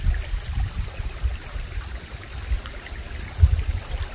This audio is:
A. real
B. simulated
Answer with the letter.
A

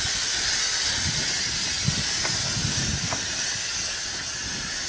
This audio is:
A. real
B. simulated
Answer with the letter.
A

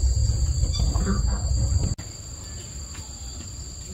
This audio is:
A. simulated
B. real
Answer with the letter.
B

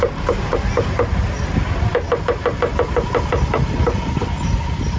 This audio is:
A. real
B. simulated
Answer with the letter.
A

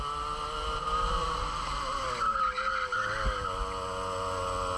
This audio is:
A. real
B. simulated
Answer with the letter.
A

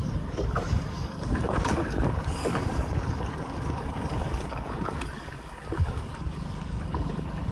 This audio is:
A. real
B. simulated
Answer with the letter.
B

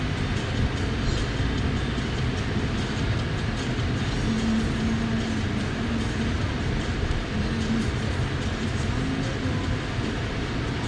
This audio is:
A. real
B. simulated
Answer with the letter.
A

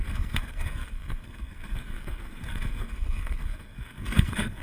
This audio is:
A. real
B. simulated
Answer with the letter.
B